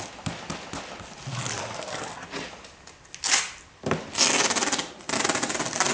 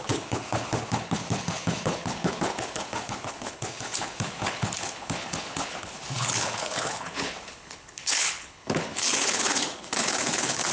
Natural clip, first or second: first